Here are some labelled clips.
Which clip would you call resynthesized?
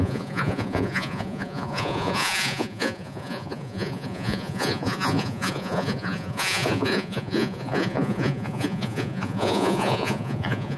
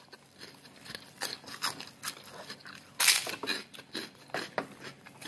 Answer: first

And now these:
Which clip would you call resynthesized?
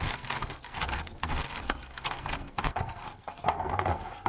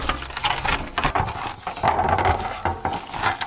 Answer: first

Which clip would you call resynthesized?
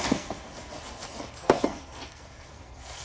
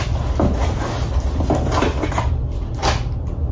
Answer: first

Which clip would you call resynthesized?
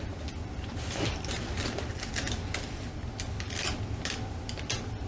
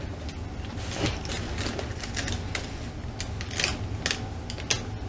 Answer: first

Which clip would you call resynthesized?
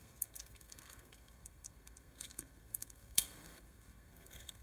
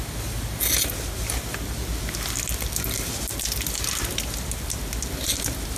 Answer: first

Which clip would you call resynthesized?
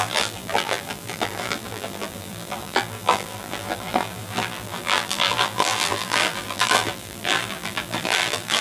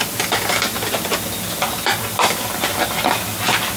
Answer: first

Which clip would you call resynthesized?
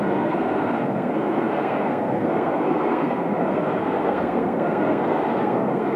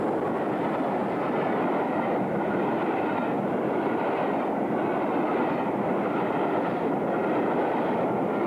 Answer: first